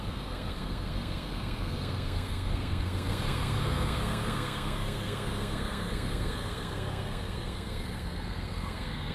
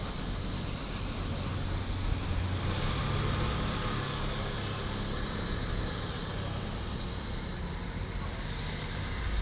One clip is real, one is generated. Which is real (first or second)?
second